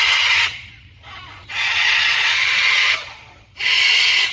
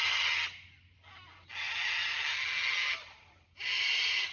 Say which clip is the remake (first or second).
first